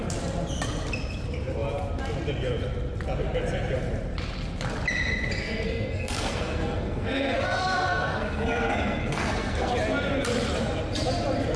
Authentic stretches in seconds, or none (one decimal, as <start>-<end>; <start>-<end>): 0.0-5.4; 9.7-11.6